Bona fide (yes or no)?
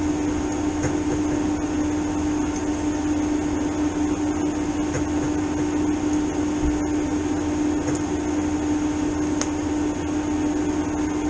yes